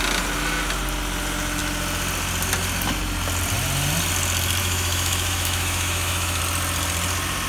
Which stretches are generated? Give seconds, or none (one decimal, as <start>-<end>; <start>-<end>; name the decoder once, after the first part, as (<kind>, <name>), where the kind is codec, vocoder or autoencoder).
4.6-6.4 (autoencoder, DAC-VAE)